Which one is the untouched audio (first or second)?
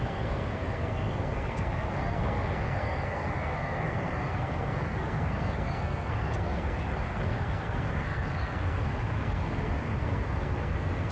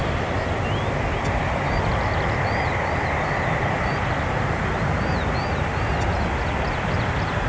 second